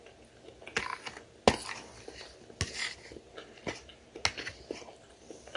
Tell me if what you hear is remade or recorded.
recorded